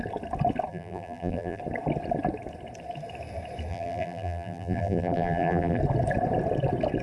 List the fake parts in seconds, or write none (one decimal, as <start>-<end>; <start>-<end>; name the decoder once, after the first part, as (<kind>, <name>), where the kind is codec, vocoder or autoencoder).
0.7-1.6 (vocoder, BigVGAN v2); 3.7-5.8